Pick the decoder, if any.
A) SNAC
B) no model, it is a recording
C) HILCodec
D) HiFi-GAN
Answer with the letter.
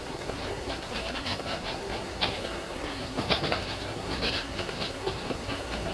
A